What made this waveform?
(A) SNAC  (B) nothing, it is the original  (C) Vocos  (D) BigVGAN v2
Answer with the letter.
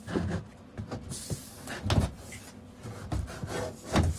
B